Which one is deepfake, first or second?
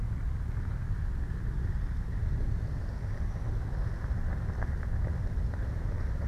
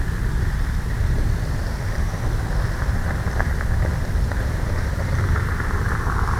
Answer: second